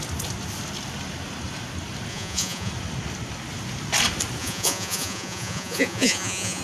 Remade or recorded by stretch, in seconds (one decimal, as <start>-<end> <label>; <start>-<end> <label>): 0.0-2.1 recorded; 2.1-2.7 remade; 2.7-4.4 recorded; 4.4-6.6 remade